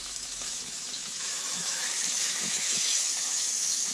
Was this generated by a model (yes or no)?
yes